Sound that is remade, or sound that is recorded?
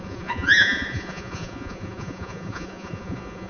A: remade